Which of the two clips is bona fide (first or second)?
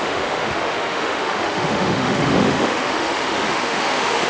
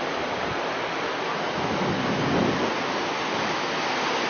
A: second